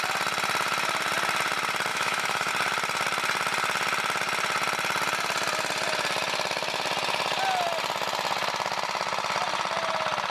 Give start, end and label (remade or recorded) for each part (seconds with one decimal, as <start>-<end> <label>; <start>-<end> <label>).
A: 0.0-1.9 recorded; 1.9-2.5 remade; 2.5-10.3 recorded